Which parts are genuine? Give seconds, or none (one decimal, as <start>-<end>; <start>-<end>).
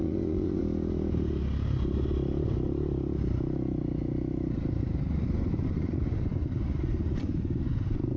0.6-5.1